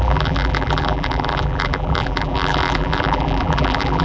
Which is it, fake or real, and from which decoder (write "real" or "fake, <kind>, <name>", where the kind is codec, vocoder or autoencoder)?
fake, vocoder, BigVGAN v2